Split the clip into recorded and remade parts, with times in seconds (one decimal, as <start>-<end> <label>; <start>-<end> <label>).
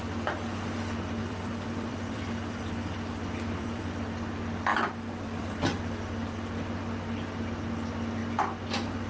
0.0-1.2 recorded; 1.2-3.9 remade; 3.9-4.7 recorded; 4.7-5.6 remade; 5.6-9.1 recorded